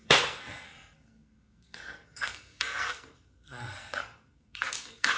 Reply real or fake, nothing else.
fake